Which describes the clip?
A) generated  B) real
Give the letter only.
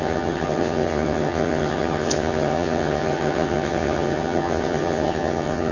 A